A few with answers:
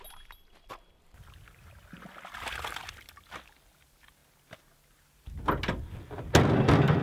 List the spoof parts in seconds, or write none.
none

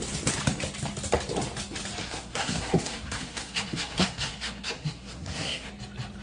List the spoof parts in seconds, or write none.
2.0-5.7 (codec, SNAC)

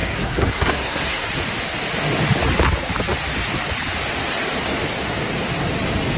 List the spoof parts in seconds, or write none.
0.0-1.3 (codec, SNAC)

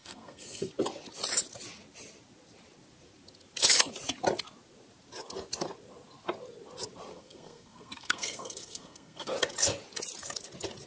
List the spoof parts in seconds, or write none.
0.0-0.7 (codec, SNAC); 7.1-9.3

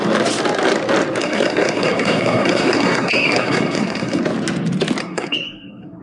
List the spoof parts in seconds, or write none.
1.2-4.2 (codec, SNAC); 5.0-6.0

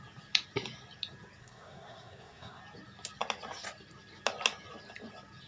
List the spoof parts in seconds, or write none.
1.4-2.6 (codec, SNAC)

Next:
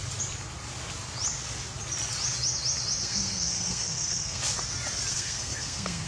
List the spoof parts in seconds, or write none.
3.0-4.4 (codec, SNAC); 5.1-6.1